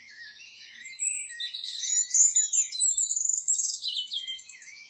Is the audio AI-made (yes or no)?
yes